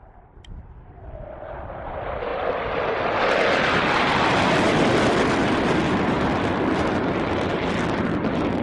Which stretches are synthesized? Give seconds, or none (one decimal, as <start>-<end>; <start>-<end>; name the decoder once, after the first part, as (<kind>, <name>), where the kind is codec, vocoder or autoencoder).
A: none